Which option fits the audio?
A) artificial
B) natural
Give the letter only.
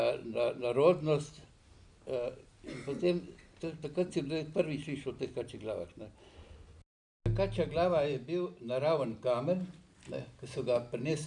B